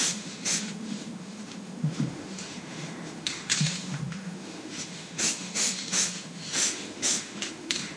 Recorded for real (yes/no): no